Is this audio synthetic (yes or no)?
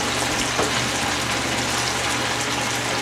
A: no